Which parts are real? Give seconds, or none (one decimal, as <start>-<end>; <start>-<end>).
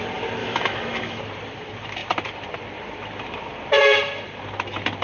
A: 0.0-0.4; 1.2-5.0